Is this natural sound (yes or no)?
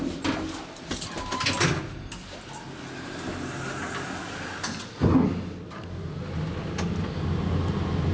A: yes